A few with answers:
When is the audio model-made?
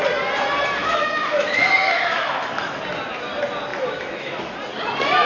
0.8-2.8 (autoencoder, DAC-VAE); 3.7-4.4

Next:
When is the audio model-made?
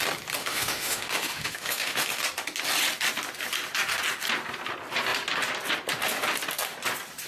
0.4-2.2 (autoencoder, DAC-VAE)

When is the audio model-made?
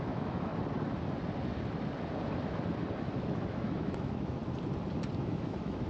0.0-0.5 (autoencoder, DAC-VAE); 3.0-4.4; 5.2-5.9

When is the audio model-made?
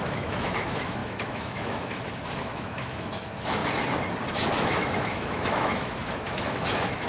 0.0-3.6 (autoencoder, DAC-VAE); 4.3-7.1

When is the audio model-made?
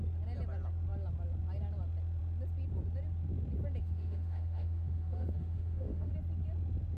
3.8-6.1 (autoencoder, DAC-VAE)